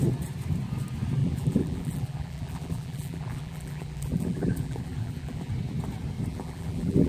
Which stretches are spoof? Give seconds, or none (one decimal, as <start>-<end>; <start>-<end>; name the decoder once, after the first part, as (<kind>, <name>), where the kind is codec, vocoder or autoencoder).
1.2-5.5 (vocoder, BigVGAN v2); 6.3-7.1